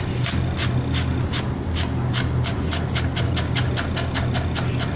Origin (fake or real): real